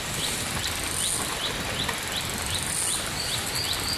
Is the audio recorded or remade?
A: recorded